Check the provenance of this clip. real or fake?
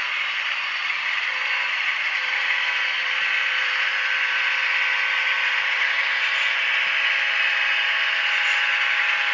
fake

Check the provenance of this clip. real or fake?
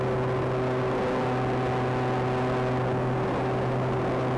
real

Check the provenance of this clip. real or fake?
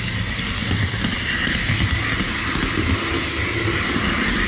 real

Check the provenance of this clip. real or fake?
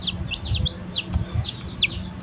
real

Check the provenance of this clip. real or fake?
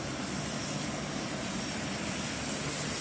real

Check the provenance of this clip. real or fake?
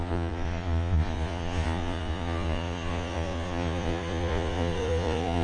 fake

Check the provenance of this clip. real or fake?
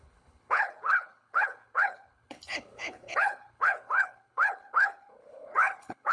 fake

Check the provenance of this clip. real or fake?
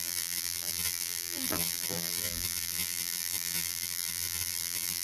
fake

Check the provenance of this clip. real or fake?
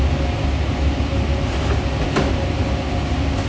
real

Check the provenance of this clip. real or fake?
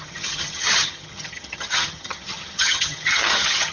fake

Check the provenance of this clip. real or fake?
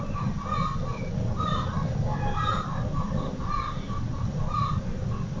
real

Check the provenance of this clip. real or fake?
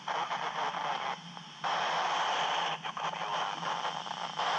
real